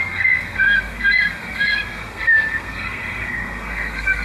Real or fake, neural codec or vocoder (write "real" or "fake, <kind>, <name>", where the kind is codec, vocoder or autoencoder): fake, codec, SNAC